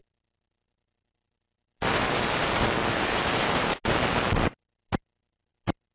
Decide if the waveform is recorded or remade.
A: recorded